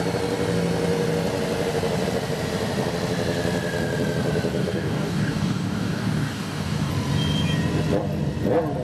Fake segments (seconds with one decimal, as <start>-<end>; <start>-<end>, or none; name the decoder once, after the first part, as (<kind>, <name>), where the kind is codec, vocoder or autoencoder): 4.6-6.9 (codec, DAC)